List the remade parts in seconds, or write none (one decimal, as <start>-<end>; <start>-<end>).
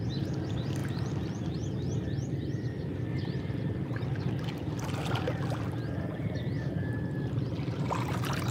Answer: none